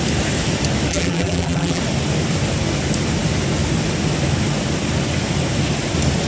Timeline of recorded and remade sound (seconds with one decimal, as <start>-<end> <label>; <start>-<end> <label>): 0.0-0.9 recorded; 0.9-1.8 remade; 1.8-6.3 recorded